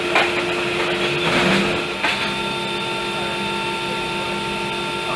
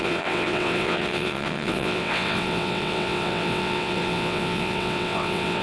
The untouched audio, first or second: first